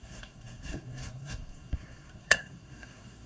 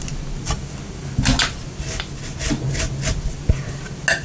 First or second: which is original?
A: second